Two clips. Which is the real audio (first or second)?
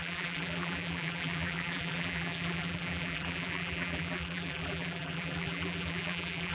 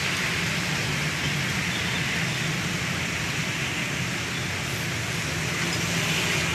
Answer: second